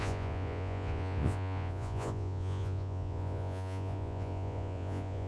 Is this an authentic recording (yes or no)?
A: no